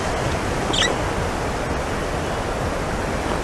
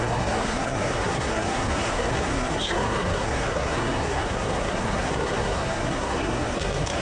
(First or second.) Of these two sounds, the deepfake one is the second